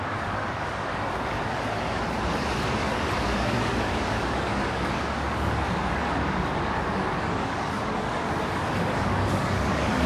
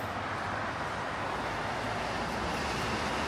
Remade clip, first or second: first